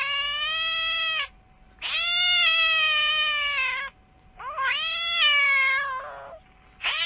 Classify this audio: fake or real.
real